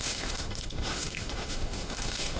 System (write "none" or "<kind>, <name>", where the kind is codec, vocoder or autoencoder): autoencoder, DAC-VAE